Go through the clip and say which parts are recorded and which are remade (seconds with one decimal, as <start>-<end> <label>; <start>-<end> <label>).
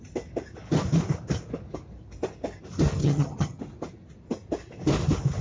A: 0.0-3.0 recorded; 3.0-3.6 remade; 3.6-5.4 recorded